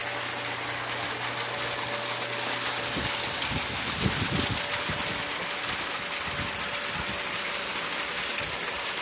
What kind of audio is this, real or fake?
real